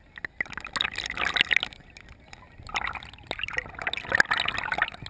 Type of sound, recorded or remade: recorded